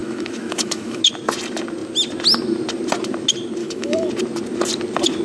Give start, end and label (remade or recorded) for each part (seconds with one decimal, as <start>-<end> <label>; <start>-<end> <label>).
0.0-1.0 remade; 1.0-3.6 recorded; 3.6-4.1 remade; 4.1-5.2 recorded